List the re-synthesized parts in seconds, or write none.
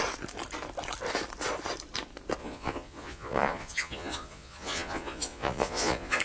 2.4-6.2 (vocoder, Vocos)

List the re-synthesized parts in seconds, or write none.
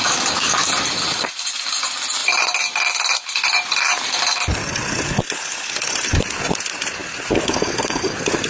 0.0-0.7 (codec, DAC)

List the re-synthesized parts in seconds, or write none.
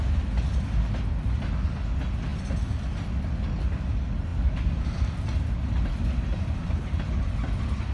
4.3-7.1 (vocoder, BigVGAN v2)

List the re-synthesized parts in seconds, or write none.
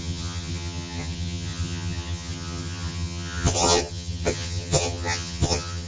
0.0-5.9 (vocoder, HiFi-GAN)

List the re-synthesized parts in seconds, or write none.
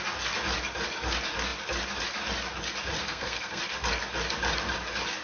3.0-3.6 (codec, SNAC)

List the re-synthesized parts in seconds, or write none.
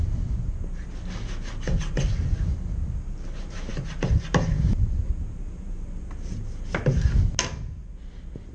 none